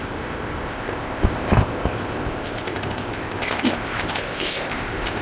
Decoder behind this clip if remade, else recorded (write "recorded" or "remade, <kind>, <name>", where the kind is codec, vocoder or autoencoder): remade, codec, ZipCodec